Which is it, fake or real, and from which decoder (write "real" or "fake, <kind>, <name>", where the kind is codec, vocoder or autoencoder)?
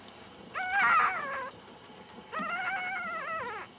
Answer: real